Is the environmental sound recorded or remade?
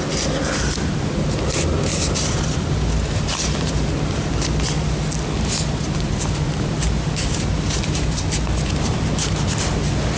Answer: recorded